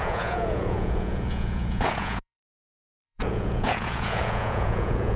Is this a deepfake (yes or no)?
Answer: yes